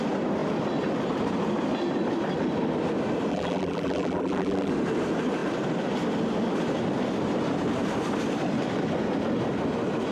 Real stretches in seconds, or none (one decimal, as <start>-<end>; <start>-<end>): 0.0-3.3; 4.7-10.1